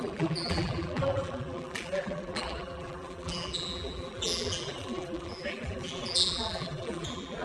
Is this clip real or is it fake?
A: fake